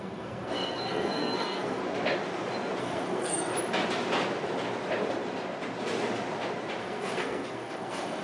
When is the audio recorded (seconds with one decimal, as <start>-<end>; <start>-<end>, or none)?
1.8-2.8; 3.5-6.8